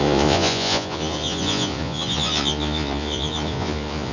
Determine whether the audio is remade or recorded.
remade